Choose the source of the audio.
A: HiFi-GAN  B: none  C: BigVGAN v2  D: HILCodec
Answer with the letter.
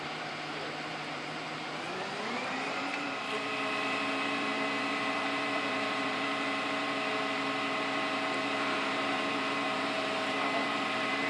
C